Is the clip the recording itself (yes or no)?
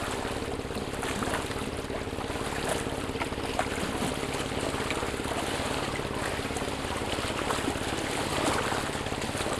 yes